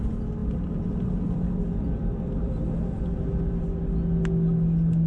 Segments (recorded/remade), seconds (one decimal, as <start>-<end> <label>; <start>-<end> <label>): 0.0-0.4 recorded; 0.4-3.5 remade; 3.5-5.1 recorded